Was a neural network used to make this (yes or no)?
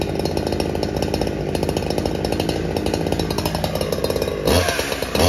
no